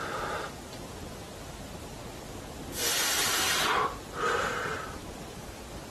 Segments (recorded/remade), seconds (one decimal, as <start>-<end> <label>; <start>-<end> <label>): 0.0-5.9 recorded

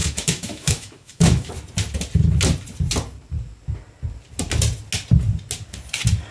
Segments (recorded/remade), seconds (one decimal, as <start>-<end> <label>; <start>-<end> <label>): 0.0-1.5 remade; 1.5-6.3 recorded

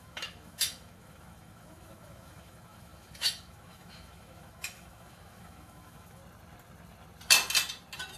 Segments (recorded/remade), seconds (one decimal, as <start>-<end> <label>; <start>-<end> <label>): 0.0-6.2 remade; 6.2-8.2 recorded

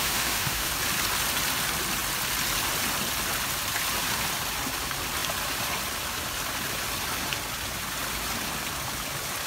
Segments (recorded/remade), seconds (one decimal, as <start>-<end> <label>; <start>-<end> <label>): 0.0-0.7 remade; 0.7-9.5 recorded

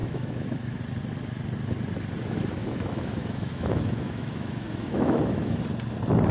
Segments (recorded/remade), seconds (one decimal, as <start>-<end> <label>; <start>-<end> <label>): 0.0-0.8 remade; 0.8-2.6 recorded; 2.6-5.6 remade; 5.6-6.3 recorded